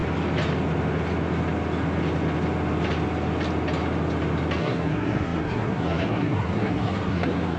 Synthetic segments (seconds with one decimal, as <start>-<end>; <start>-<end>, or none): 4.6-7.6